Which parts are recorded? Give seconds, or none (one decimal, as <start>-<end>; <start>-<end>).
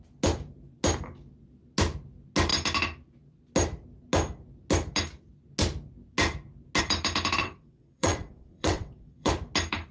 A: 0.0-7.4; 9.3-9.9